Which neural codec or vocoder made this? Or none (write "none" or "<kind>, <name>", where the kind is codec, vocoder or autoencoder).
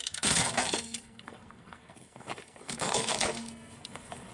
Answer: codec, SNAC